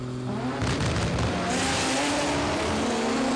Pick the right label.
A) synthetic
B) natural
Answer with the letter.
B